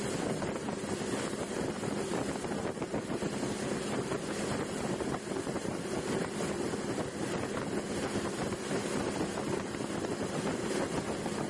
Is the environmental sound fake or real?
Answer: real